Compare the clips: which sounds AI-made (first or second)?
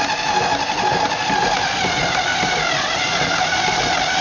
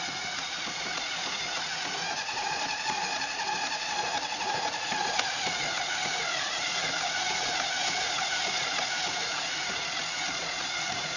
second